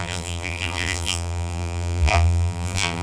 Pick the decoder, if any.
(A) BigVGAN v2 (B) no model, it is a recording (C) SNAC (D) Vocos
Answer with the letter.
A